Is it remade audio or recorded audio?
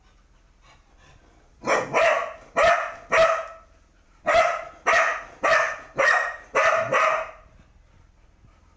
recorded